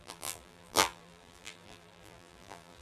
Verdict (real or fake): fake